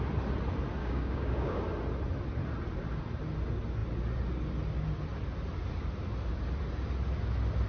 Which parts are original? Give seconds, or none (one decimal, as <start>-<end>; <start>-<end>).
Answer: 0.0-0.8; 1.6-7.7